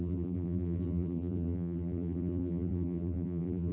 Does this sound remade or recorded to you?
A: remade